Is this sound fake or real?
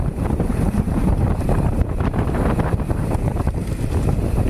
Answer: fake